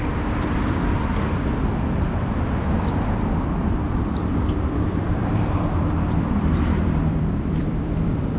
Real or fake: fake